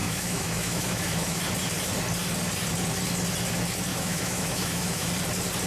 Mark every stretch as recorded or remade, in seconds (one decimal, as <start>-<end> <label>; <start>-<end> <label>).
0.0-1.4 remade; 1.4-3.9 recorded; 3.9-5.1 remade; 5.1-5.7 recorded